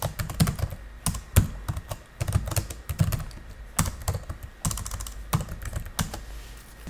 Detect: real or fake real